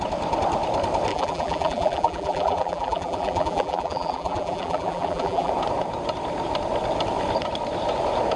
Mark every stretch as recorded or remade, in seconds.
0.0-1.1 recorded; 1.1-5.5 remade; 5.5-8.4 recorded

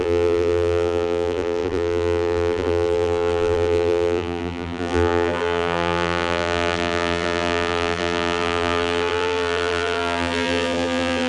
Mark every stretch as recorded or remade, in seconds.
0.0-11.3 remade

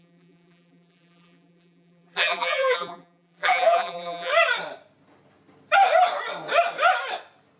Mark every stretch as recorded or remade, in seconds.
0.0-4.3 remade; 4.3-7.6 recorded